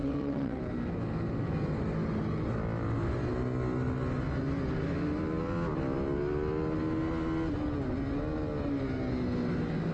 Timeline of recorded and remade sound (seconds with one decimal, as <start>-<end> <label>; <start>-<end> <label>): 0.0-0.6 remade; 0.6-9.9 recorded